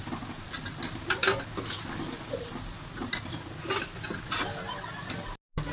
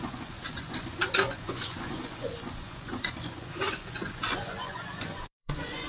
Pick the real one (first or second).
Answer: first